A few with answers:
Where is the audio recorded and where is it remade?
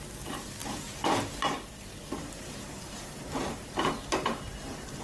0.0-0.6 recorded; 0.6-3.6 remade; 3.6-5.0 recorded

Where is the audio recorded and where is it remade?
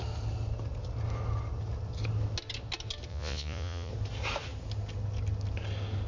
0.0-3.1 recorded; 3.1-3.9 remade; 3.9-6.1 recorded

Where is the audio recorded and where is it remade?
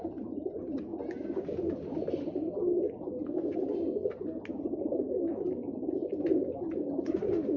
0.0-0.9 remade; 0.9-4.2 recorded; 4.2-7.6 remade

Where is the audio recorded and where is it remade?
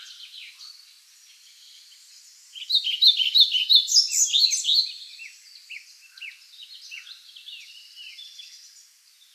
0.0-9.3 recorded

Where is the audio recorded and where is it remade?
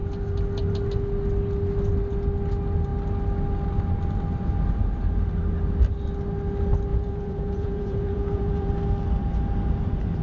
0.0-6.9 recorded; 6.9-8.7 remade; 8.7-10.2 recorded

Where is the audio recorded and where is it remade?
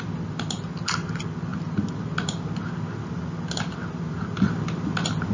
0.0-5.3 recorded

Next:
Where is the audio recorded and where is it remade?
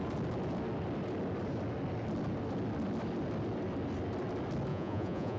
0.0-4.7 recorded; 4.7-5.4 remade